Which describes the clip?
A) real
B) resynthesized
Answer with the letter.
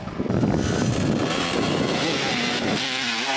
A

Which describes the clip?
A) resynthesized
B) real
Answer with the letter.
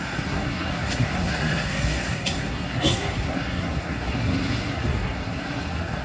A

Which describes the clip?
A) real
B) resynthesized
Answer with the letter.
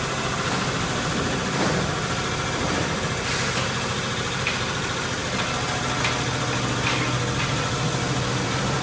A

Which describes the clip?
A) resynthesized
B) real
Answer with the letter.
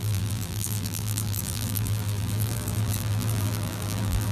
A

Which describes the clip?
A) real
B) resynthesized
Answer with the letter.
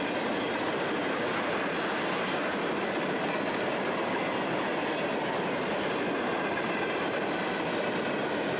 A